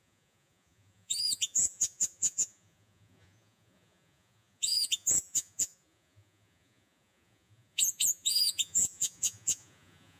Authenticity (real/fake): fake